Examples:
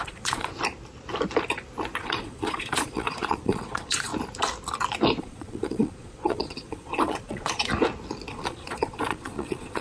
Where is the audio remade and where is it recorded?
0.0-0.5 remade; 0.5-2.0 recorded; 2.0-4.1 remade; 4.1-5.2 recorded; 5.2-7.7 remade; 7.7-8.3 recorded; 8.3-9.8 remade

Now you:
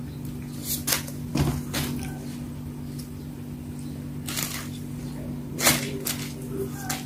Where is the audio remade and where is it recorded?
0.0-7.1 recorded

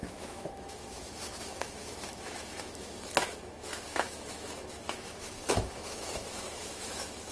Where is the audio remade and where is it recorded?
0.0-7.3 remade

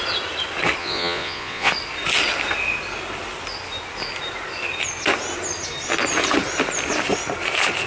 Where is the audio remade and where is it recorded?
0.0-0.8 recorded; 0.8-1.7 remade; 1.7-7.9 recorded

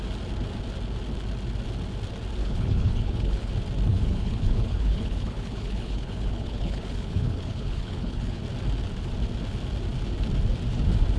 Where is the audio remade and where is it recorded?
0.0-2.4 recorded; 2.4-3.5 remade; 3.5-3.9 recorded; 3.9-8.4 remade; 8.4-11.2 recorded

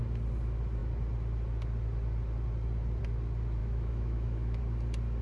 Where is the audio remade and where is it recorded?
0.0-3.6 recorded; 3.6-4.6 remade; 4.6-5.2 recorded